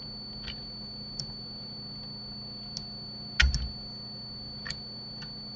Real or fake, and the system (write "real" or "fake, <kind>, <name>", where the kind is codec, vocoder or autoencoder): real